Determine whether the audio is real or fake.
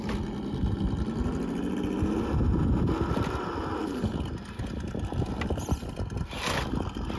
real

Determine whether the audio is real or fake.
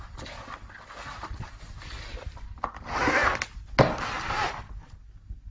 real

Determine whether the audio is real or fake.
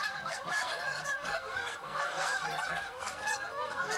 fake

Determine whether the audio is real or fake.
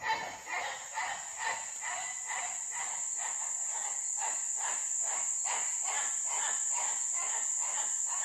real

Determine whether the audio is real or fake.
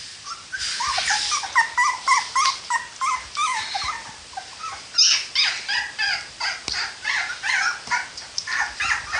real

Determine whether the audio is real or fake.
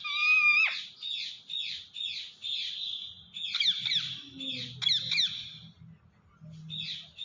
real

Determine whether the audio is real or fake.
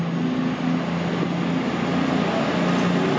real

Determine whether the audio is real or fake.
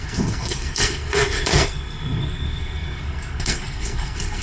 fake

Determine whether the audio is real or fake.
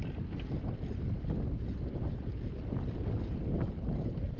real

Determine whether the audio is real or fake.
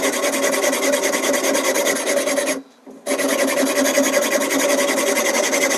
real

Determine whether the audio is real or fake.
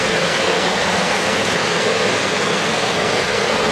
fake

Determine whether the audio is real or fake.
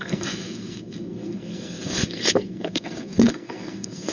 fake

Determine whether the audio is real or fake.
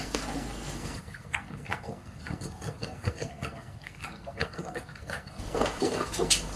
fake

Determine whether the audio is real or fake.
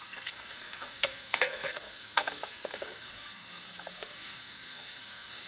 fake